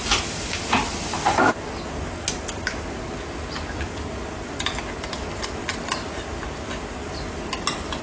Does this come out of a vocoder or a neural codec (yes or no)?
no